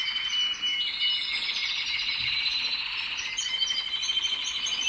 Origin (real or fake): real